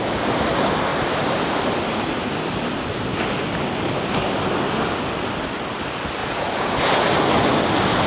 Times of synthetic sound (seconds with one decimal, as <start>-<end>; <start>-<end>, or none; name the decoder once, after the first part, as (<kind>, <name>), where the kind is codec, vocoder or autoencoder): 6.2-7.1 (vocoder, Vocos)